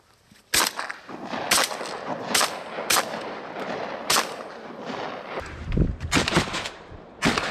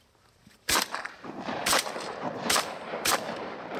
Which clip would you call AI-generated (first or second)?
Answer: second